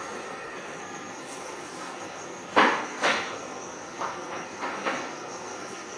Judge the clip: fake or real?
fake